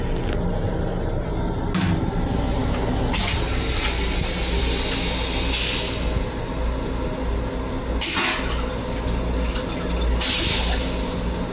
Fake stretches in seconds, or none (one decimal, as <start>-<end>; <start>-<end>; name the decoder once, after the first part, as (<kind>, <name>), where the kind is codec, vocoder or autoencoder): none